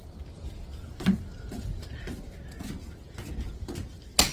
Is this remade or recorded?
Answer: recorded